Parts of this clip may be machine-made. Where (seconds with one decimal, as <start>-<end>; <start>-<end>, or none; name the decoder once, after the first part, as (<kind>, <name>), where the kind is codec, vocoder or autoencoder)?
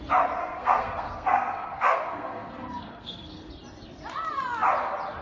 0.4-3.5 (codec, SNAC)